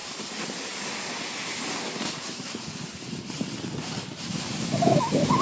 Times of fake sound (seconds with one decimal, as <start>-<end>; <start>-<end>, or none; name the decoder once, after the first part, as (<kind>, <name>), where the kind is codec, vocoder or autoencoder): none